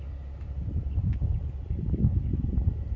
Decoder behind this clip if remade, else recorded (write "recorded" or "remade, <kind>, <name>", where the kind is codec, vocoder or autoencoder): recorded